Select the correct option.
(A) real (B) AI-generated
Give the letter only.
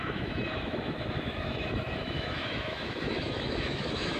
B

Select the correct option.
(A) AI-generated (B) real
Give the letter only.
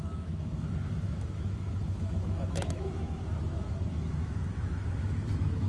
A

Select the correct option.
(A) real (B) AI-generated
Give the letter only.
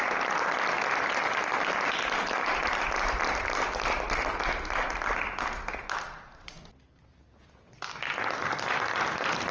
A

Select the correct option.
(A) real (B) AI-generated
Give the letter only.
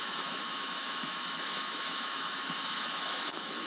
B